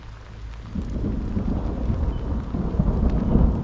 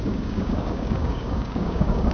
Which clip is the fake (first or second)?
second